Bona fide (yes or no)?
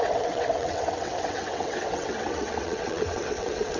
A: no